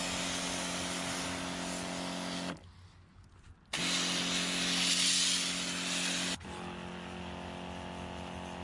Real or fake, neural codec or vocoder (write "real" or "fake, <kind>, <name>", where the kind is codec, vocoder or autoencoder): real